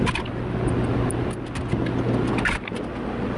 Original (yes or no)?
yes